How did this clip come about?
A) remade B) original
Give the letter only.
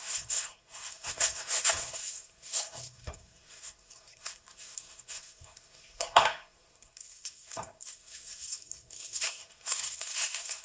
A